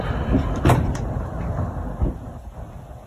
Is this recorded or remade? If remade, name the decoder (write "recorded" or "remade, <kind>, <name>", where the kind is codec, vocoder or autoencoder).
remade, vocoder, BigVGAN v2